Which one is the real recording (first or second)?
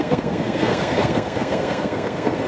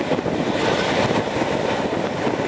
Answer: second